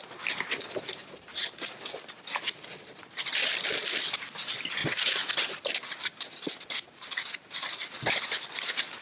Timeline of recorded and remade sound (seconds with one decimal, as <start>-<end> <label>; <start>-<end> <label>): 0.0-9.0 recorded